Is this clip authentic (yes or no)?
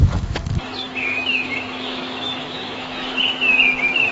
no